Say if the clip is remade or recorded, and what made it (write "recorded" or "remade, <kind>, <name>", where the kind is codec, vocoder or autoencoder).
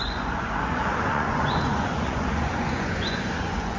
remade, vocoder, Vocos